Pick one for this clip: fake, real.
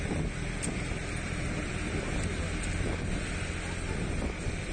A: real